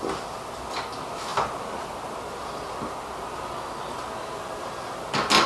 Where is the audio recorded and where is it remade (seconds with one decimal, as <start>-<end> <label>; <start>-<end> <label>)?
0.0-5.5 recorded